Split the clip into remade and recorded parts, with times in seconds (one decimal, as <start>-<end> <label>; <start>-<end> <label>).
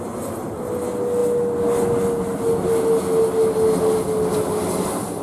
0.0-5.2 recorded